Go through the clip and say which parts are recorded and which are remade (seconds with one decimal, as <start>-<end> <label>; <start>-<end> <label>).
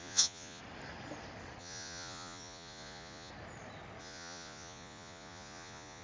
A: 0.0-0.6 remade; 0.6-1.6 recorded; 1.6-3.3 remade; 3.3-4.0 recorded; 4.0-6.0 remade